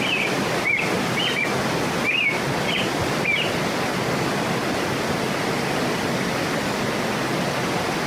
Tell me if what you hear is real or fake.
real